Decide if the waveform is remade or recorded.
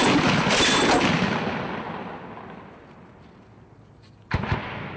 recorded